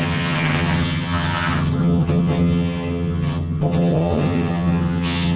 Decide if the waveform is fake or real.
fake